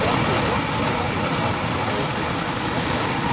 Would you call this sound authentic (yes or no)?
yes